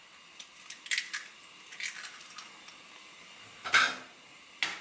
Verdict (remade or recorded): recorded